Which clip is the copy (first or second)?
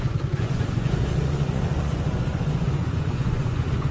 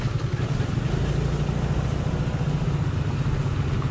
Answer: first